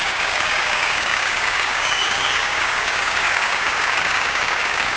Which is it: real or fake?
fake